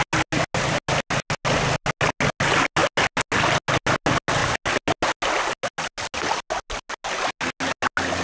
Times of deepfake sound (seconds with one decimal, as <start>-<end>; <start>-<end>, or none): none